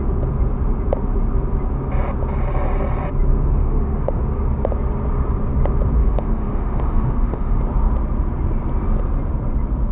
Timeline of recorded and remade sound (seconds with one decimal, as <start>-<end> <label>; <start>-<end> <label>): 0.0-3.6 recorded; 3.6-4.2 remade; 4.2-6.0 recorded; 6.0-7.6 remade; 7.6-9.9 recorded